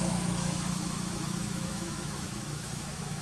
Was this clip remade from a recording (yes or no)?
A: yes